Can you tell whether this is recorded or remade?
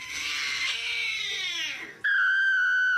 recorded